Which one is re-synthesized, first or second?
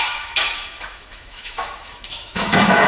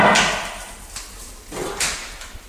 first